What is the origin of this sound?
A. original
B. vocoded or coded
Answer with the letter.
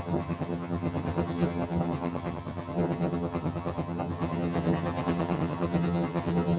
B